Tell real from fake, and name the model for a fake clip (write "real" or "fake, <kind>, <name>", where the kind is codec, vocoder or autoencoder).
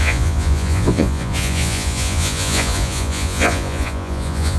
fake, vocoder, Vocos